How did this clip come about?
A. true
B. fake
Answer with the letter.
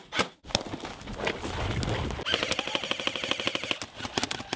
A